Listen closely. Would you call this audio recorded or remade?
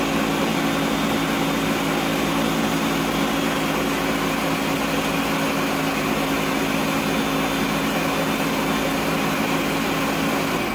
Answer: recorded